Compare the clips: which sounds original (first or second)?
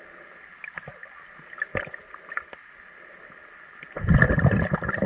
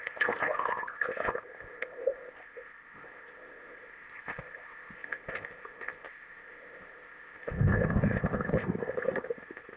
first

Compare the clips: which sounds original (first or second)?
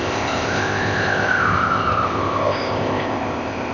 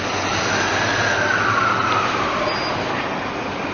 second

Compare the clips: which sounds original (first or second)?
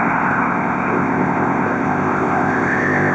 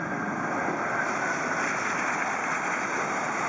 second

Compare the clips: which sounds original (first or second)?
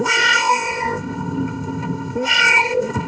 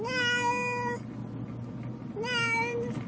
second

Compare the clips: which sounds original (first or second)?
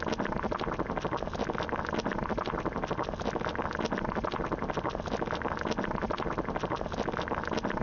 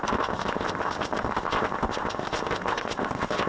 first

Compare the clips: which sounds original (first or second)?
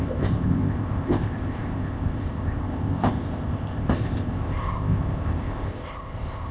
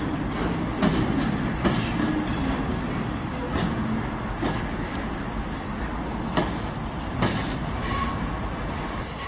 second